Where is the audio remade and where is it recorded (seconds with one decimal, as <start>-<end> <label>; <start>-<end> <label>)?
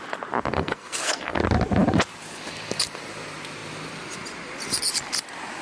0.0-0.5 recorded; 0.5-1.4 remade; 1.4-5.6 recorded